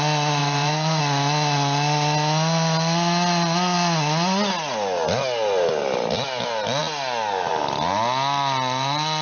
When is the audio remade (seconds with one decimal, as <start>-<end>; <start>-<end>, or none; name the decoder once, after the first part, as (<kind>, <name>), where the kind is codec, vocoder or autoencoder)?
0.4-1.0 (vocoder, BigVGAN v2)